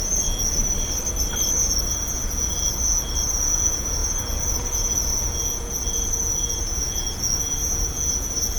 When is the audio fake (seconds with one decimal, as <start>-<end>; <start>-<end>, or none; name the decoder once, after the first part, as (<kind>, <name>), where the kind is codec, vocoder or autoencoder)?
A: 0.0-0.6 (vocoder, Vocos); 1.6-8.6